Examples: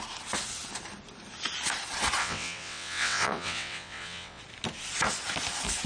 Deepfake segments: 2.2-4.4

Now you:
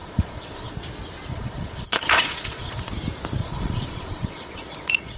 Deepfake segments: 0.0-0.7; 1.3-2.9; 3.4-5.2

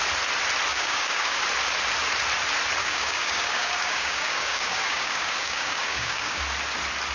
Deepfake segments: 0.7-1.4; 2.8-6.4

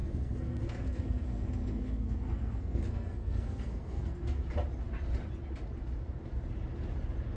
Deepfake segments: 0.0-4.4

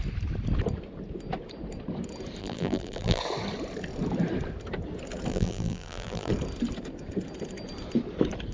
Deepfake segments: 2.4-3.2; 5.3-6.3

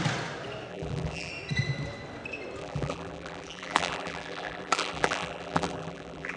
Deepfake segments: 0.7-1.3; 2.6-6.4